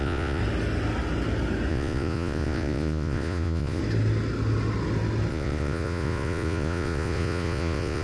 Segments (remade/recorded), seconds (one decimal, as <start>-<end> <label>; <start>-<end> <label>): 0.0-0.4 remade; 0.4-1.7 recorded; 1.7-3.8 remade; 3.8-5.3 recorded; 5.3-8.0 remade